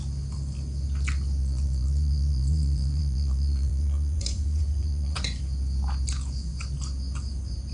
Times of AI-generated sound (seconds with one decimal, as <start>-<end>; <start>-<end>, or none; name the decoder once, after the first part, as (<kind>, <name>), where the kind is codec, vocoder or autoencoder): 1.4-5.4 (vocoder, Vocos)

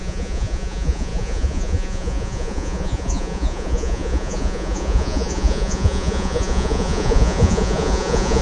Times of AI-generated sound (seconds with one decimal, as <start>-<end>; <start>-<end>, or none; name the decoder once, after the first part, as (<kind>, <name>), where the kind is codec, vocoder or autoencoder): 0.0-8.4 (vocoder, Vocos)

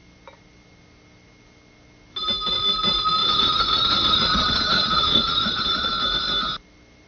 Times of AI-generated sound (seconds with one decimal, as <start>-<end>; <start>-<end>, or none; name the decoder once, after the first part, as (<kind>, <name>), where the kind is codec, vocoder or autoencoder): 3.2-5.9 (vocoder, Vocos)